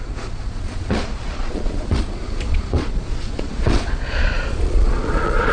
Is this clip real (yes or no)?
no